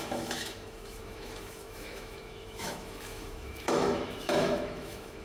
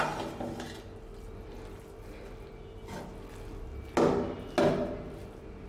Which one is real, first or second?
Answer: second